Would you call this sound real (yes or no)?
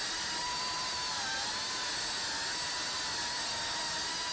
yes